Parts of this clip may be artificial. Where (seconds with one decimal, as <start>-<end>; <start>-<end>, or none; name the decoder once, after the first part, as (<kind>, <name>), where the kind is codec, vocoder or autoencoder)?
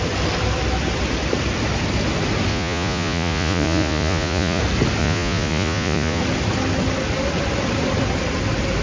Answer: 2.5-4.6 (vocoder, Vocos); 5.0-6.2